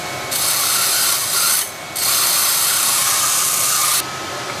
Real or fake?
real